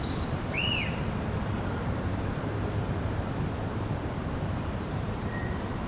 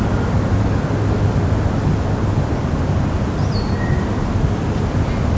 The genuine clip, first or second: second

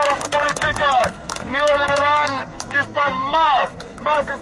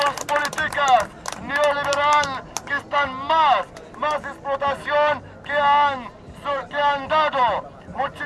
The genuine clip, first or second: second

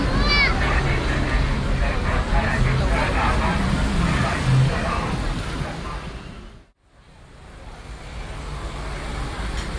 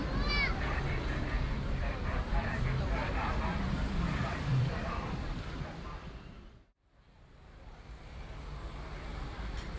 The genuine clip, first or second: first